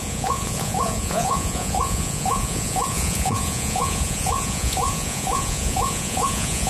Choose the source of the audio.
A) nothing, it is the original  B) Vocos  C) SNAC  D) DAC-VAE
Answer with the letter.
B